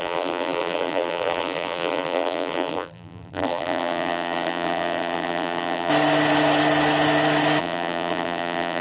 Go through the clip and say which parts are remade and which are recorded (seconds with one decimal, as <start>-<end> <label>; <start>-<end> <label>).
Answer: 0.0-5.9 remade; 5.9-7.6 recorded; 7.6-8.8 remade